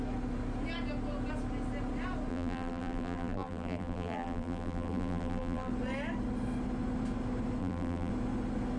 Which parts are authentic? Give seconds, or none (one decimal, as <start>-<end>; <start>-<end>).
0.0-2.3; 5.7-7.6; 8.1-8.8